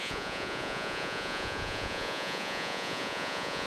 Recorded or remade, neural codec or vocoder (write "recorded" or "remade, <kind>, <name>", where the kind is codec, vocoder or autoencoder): remade, vocoder, Vocos